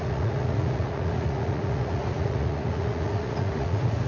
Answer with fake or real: fake